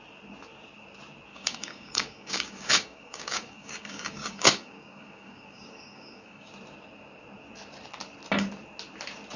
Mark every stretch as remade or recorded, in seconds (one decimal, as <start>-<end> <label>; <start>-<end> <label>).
0.0-1.3 recorded; 1.3-6.5 remade; 6.5-9.4 recorded